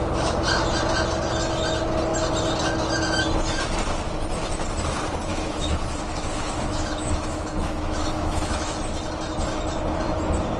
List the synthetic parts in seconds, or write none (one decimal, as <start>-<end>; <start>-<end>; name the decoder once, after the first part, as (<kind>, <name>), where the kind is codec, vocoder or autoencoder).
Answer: 5.3-8.8 (autoencoder, DAC-VAE)